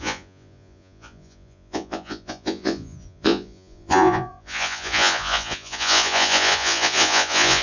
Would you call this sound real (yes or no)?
no